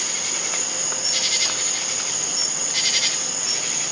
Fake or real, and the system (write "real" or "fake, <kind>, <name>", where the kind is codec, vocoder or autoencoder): real